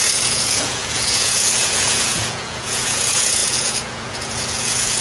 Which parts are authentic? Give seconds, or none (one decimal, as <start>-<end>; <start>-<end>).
none